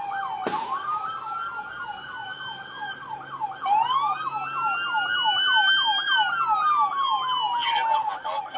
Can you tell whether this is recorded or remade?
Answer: recorded